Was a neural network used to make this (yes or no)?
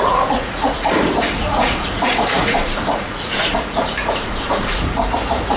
yes